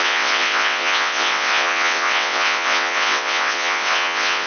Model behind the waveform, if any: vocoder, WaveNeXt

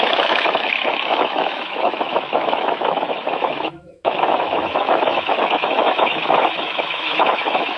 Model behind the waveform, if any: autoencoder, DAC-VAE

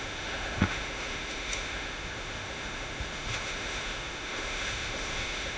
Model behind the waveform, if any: autoencoder, DAC-VAE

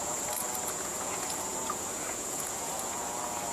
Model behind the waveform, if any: vocoder, Vocos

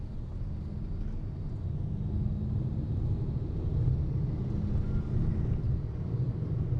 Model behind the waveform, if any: none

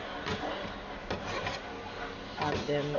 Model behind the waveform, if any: none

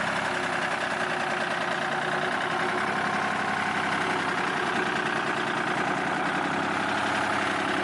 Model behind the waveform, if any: none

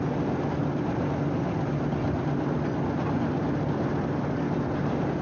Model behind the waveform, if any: none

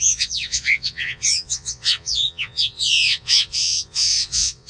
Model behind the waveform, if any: vocoder, Vocos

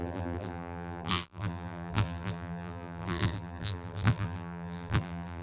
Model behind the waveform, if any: vocoder, BigVGAN v2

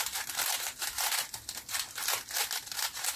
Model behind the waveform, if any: vocoder, BigVGAN v2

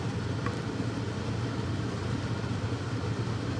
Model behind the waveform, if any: none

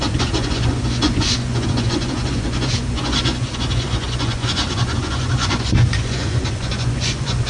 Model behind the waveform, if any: vocoder, Vocos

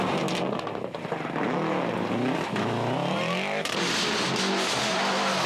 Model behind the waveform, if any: none